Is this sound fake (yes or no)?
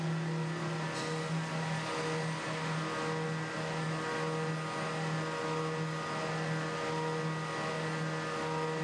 no